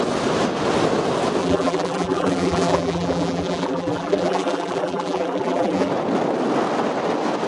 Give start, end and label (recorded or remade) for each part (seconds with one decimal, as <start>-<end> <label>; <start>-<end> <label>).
0.0-1.4 recorded; 1.4-5.9 remade; 5.9-7.5 recorded